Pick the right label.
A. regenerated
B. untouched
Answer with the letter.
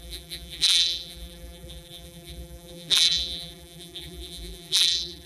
A